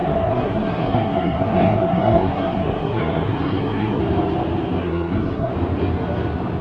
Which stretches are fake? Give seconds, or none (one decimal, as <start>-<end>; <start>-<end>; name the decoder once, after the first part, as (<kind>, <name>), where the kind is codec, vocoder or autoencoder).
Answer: 0.0-4.0 (codec, SNAC); 4.8-5.5